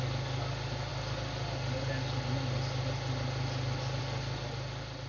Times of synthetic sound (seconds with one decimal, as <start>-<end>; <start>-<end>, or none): none